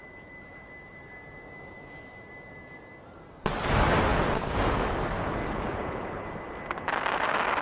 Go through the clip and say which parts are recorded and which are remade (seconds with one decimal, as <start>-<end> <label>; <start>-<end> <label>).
0.0-4.1 recorded; 4.1-4.7 remade; 4.7-5.4 recorded; 5.4-6.3 remade; 6.3-7.6 recorded